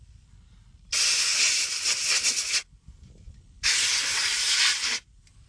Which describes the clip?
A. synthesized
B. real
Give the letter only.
B